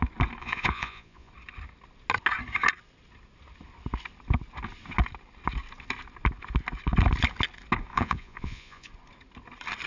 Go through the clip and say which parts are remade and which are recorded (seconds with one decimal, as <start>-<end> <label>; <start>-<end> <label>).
0.0-0.4 recorded; 0.4-1.3 remade; 1.3-7.9 recorded; 7.9-8.9 remade; 8.9-9.9 recorded